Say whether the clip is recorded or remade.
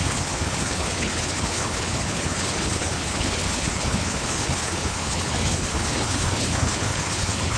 remade